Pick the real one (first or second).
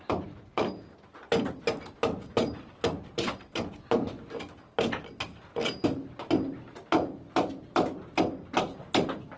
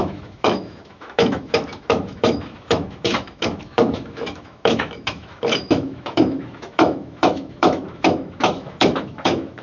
first